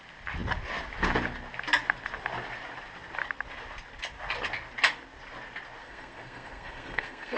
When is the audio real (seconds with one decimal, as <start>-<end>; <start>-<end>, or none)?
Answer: 0.0-5.8